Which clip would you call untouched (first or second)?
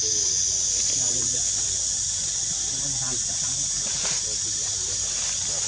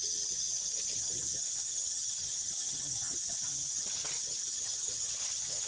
first